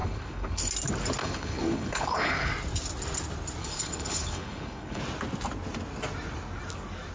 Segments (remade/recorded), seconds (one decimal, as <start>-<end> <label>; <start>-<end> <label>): 0.0-0.7 remade; 0.7-1.2 recorded; 1.2-2.5 remade; 2.5-3.6 recorded; 3.6-5.0 remade; 5.0-7.1 recorded